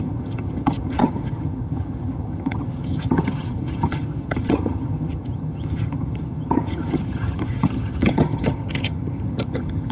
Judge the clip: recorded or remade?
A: remade